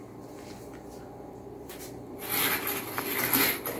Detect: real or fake real